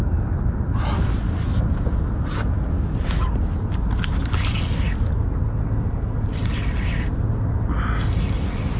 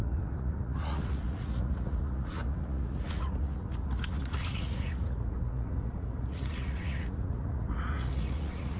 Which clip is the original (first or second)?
first